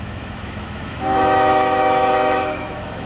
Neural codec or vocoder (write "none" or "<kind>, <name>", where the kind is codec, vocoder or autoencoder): autoencoder, DAC-VAE